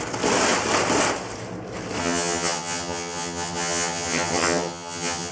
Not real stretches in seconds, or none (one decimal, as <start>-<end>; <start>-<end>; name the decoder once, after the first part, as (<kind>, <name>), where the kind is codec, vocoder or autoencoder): 2.0-5.3 (vocoder, HiFi-GAN)